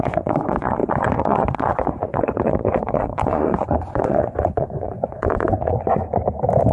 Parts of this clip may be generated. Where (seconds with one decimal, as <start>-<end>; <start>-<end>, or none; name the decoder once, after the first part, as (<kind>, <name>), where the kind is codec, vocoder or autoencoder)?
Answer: 0.0-6.2 (vocoder, Vocos)